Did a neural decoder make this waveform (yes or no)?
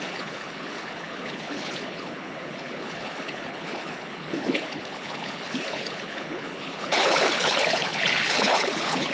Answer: yes